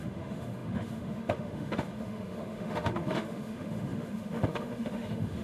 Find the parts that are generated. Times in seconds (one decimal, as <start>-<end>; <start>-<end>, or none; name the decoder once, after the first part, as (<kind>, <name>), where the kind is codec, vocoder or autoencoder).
0.0-5.4 (autoencoder, DAC-VAE)